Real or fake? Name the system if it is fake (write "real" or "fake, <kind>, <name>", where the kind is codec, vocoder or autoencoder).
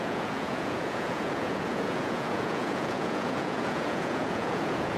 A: fake, vocoder, Vocos